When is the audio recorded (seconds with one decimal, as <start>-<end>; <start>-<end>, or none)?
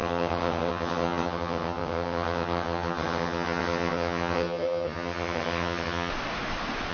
6.1-6.9